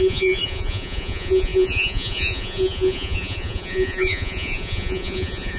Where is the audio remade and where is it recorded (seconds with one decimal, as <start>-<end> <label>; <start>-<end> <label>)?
0.0-5.6 remade